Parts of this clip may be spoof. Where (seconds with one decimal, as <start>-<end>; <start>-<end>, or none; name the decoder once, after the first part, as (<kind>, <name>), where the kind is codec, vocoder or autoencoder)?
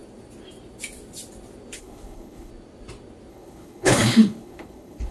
1.8-2.5 (codec, HILCodec); 3.3-5.1